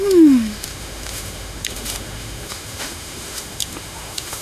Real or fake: fake